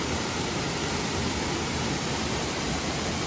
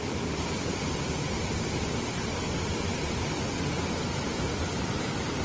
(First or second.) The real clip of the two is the first